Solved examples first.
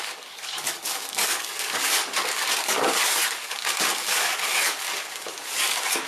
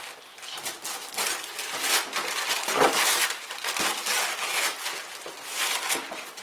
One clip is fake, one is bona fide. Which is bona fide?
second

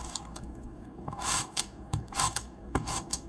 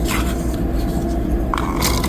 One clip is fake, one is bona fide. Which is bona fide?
second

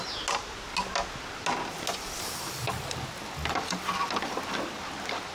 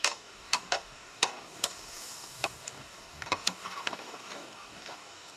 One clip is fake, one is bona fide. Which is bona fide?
first